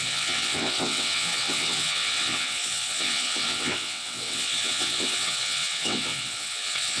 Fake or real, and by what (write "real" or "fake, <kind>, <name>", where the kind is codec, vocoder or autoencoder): fake, vocoder, WaveNeXt